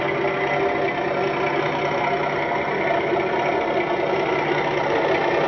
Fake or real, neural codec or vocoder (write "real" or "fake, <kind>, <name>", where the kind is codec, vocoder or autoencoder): real